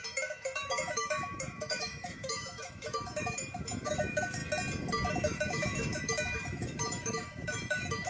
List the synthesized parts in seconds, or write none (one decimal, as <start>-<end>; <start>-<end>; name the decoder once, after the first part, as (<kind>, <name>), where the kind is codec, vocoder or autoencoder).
0.0-4.4 (autoencoder, DAC-VAE); 5.1-8.1